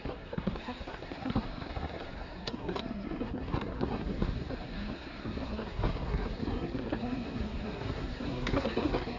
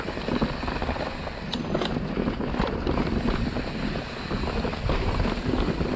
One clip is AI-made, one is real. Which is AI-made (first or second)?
first